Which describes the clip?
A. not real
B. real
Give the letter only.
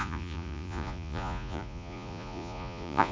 A